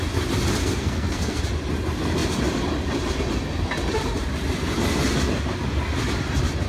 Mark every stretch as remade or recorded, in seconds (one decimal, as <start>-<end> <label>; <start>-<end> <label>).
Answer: 0.0-0.6 recorded; 0.6-1.4 remade; 1.4-6.7 recorded